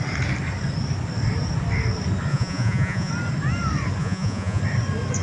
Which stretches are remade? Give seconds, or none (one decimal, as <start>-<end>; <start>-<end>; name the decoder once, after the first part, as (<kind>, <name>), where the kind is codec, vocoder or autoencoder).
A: 2.3-3.1 (vocoder, Vocos); 4.0-4.6